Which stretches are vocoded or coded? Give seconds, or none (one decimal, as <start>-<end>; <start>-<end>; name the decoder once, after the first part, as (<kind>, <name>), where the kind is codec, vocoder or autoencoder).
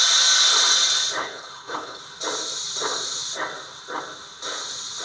1.2-2.0 (codec, HILCodec)